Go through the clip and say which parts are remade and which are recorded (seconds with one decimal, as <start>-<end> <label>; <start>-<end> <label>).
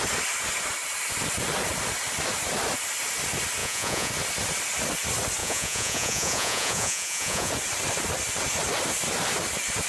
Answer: 0.0-3.6 recorded; 3.6-4.1 remade; 4.1-5.4 recorded; 5.4-7.5 remade; 7.5-9.9 recorded